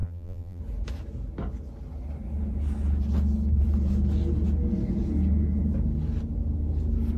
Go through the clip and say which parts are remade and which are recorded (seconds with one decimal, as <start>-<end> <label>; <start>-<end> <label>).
0.0-0.6 remade; 0.6-7.2 recorded